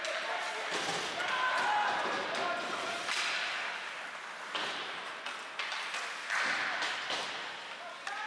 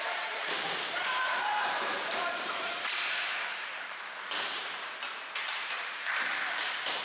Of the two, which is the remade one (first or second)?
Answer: second